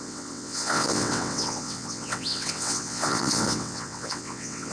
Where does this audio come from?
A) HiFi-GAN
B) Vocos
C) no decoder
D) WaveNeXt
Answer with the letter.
D